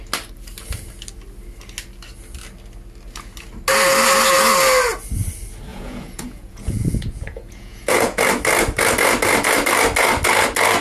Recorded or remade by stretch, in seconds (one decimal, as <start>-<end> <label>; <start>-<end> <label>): 0.0-5.7 recorded; 5.7-8.2 remade; 8.2-10.8 recorded